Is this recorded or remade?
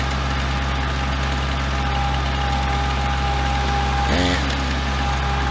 recorded